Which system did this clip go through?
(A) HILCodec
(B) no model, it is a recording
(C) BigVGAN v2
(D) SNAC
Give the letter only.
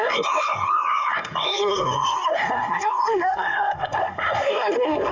D